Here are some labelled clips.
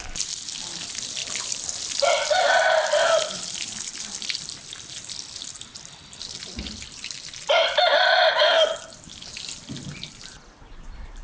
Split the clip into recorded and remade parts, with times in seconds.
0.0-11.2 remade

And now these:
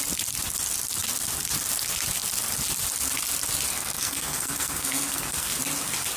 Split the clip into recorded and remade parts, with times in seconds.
0.0-3.7 recorded; 3.7-5.6 remade; 5.6-6.2 recorded

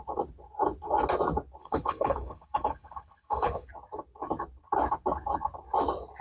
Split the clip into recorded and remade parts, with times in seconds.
0.0-1.6 recorded; 1.6-3.7 remade; 3.7-6.2 recorded